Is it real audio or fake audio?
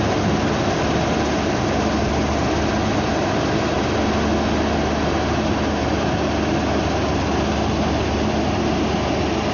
real